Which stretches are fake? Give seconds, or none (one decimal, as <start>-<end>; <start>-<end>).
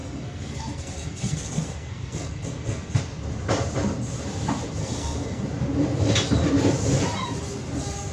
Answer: 0.0-3.0; 4.8-5.4